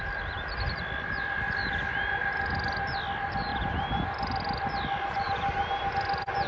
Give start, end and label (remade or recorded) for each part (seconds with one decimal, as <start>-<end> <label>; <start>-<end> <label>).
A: 0.0-3.5 recorded; 3.5-5.9 remade; 5.9-6.5 recorded